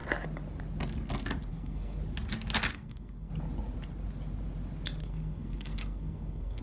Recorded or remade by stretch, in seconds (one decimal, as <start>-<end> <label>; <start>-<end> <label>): 0.0-1.5 recorded; 1.5-2.0 remade; 2.0-2.7 recorded; 2.7-3.3 remade; 3.3-5.0 recorded; 5.0-6.6 remade